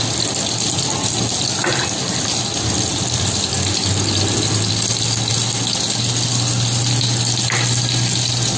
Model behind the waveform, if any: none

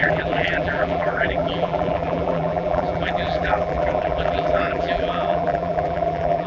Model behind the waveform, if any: vocoder, BigVGAN v2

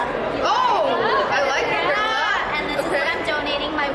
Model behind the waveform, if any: vocoder, BigVGAN v2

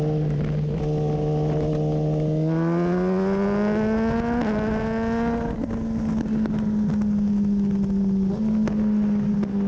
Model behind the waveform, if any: none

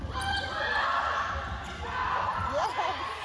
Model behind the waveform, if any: none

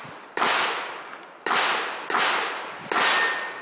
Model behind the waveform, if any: none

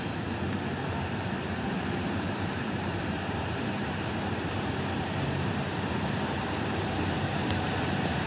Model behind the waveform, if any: vocoder, BigVGAN v2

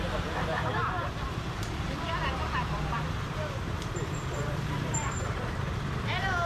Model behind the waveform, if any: vocoder, BigVGAN v2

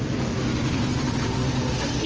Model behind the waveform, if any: none